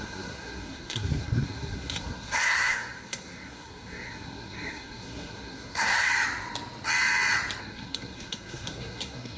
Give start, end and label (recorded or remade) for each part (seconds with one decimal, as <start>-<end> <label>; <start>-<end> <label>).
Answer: 0.0-6.1 remade; 6.1-7.6 recorded; 7.6-9.4 remade